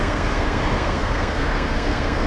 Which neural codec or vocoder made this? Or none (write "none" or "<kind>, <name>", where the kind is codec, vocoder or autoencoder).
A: codec, SNAC